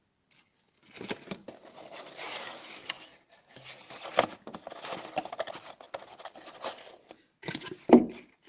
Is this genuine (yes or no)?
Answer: yes